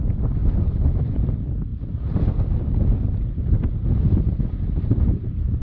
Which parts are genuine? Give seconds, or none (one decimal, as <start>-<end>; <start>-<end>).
0.0-0.4; 1.2-5.6